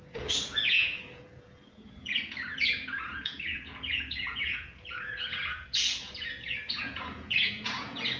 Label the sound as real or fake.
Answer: fake